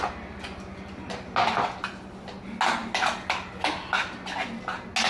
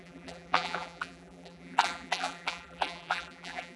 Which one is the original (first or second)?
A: first